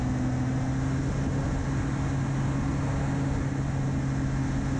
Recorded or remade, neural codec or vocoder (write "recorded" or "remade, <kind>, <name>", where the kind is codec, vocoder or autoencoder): recorded